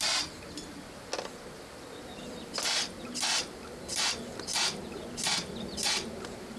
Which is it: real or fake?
real